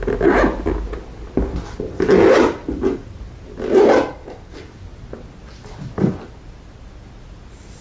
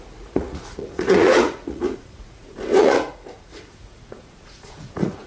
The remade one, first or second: second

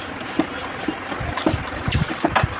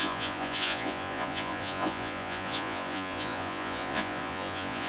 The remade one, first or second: second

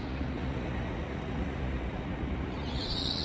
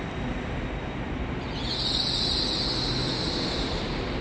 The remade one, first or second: first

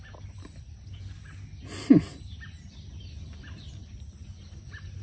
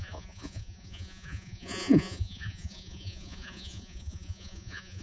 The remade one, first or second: second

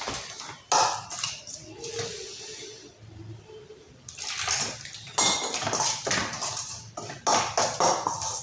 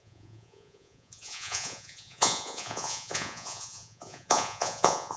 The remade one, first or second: second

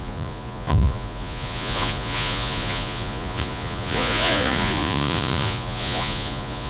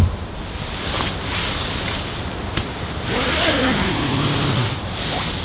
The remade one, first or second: first